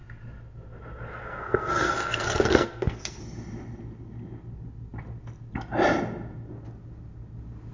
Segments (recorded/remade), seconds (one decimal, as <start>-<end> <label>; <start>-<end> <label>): 0.0-1.2 recorded; 1.2-3.2 remade; 3.2-7.7 recorded